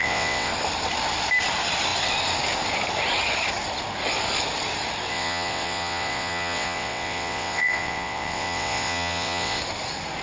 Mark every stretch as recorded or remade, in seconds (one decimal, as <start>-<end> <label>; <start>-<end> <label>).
0.0-0.5 remade; 0.5-5.1 recorded; 5.1-9.6 remade; 9.6-10.2 recorded